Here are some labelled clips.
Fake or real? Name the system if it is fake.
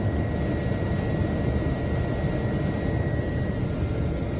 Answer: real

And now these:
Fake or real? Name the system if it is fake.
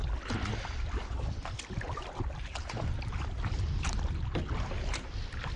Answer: fake, vocoder, BigVGAN v2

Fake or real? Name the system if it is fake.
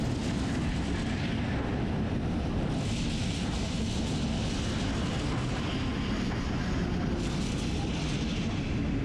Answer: real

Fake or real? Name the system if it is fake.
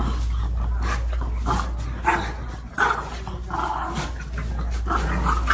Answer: real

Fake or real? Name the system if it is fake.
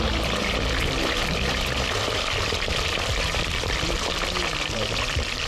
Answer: fake, vocoder, BigVGAN v2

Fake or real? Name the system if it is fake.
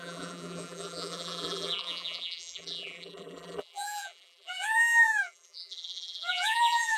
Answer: fake, vocoder, BigVGAN v2